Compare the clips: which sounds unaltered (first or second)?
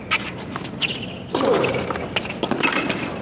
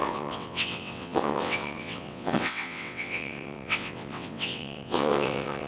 first